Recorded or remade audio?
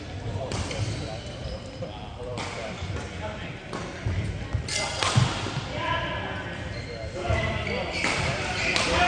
recorded